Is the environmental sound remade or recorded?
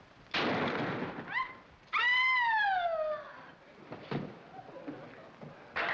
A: recorded